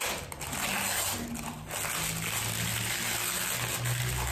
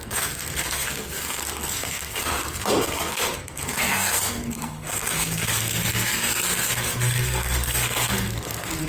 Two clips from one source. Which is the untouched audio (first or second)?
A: first